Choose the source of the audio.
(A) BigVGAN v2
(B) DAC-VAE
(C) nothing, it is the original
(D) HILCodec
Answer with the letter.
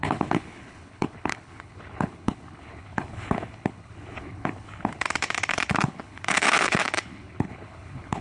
D